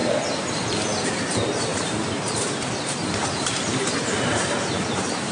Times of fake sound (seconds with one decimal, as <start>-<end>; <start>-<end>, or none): 1.7-5.3